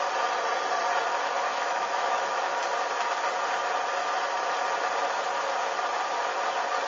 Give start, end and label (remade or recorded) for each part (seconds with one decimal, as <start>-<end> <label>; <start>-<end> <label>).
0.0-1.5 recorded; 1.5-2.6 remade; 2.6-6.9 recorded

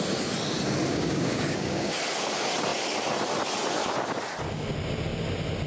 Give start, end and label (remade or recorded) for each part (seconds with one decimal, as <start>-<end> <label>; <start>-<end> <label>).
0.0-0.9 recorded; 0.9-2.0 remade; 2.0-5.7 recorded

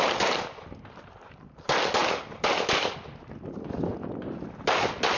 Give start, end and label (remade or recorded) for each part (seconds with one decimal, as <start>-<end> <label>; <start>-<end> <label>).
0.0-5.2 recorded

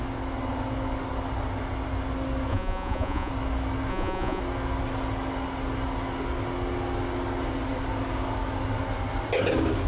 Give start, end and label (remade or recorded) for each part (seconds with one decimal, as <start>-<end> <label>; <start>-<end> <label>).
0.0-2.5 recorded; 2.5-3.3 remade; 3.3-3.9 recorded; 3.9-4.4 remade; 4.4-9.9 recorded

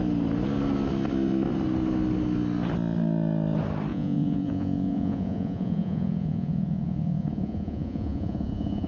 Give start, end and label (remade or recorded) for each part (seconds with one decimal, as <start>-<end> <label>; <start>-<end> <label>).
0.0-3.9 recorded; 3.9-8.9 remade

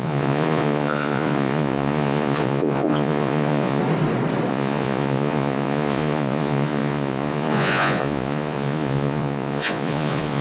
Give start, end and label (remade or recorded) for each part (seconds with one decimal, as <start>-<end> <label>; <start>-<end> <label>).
0.0-3.8 remade; 3.8-4.5 recorded; 4.5-10.4 remade

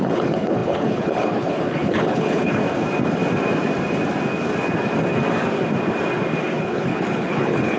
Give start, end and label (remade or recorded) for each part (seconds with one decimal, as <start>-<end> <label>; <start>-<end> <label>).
0.0-2.6 remade; 2.6-6.6 recorded; 6.6-7.8 remade